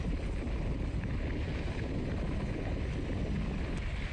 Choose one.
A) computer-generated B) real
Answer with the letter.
B